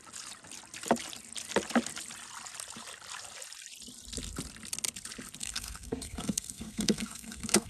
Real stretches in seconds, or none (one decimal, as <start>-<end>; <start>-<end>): 0.0-5.4